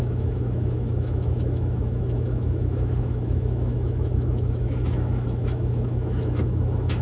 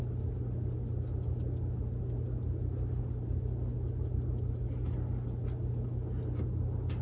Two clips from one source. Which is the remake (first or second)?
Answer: first